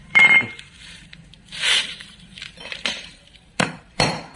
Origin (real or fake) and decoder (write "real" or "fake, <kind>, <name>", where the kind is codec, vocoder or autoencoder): fake, vocoder, BigVGAN v2